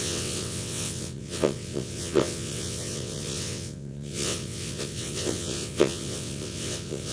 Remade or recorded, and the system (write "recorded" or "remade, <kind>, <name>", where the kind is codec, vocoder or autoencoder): remade, vocoder, WaveNeXt